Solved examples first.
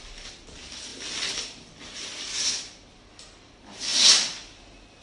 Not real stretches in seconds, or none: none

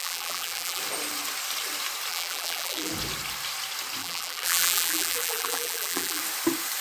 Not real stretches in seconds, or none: 0.0-0.8 (vocoder, BigVGAN v2); 2.1-2.9; 4.0-6.2

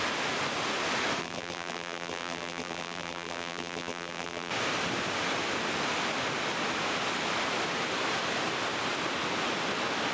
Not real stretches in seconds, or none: 1.2-4.5 (vocoder, BigVGAN v2)

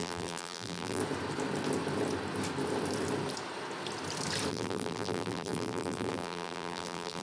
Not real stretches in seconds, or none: 0.0-1.0 (vocoder, BigVGAN v2); 4.5-7.2

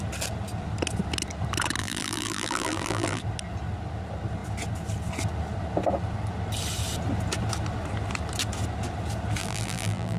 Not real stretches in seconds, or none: 1.8-3.2 (vocoder, BigVGAN v2); 9.4-10.2

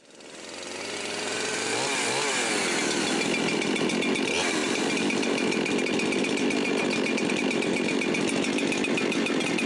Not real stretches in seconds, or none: none

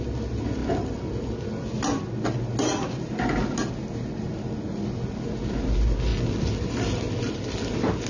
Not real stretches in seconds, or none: none

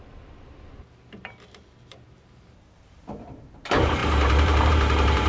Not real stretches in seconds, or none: 0.0-5.3 (vocoder, BigVGAN v2)